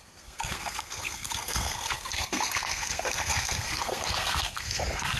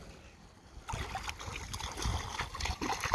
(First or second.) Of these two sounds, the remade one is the first